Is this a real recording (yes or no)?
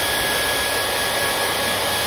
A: yes